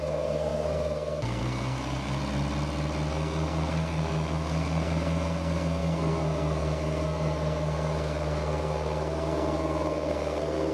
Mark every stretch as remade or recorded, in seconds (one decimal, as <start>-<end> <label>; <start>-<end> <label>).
0.0-2.2 remade; 2.2-3.1 recorded; 3.1-10.7 remade